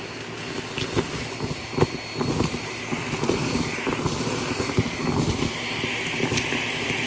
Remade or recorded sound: recorded